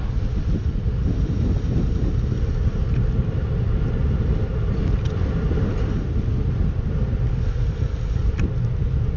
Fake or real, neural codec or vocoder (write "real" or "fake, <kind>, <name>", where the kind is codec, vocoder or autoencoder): real